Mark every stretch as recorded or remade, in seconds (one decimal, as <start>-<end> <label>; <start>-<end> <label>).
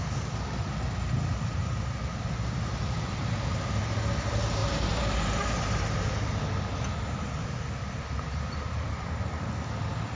0.0-1.6 recorded; 1.6-3.8 remade; 3.8-4.6 recorded; 4.6-6.4 remade; 6.4-7.4 recorded; 7.4-9.2 remade; 9.2-10.2 recorded